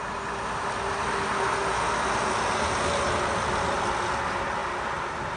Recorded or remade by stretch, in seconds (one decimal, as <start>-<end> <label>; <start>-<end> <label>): 0.0-5.4 recorded